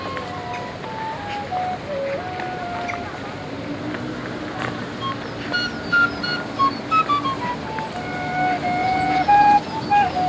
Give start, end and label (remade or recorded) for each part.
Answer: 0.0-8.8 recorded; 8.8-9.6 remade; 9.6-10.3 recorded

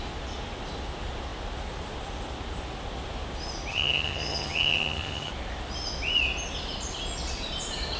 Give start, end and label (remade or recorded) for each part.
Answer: 0.0-3.7 recorded; 3.7-5.3 remade; 5.3-8.0 recorded

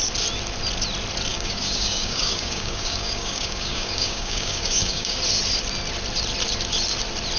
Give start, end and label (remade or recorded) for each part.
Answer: 0.0-1.3 recorded; 1.3-5.2 remade; 5.2-7.4 recorded

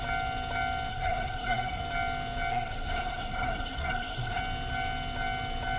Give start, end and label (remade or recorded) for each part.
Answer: 0.0-0.9 recorded; 0.9-1.8 remade; 1.8-2.5 recorded; 2.5-4.4 remade; 4.4-5.8 recorded

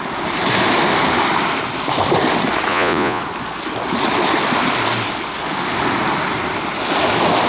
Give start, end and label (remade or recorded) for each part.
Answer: 0.0-2.7 recorded; 2.7-3.2 remade; 3.2-7.5 recorded

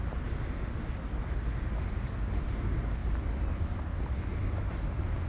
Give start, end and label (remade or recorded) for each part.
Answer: 0.0-5.3 recorded

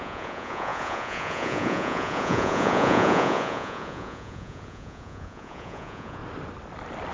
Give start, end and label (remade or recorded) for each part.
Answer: 0.0-6.2 remade; 6.2-7.1 recorded

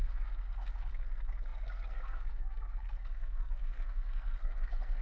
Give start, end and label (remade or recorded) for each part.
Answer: 0.0-5.0 remade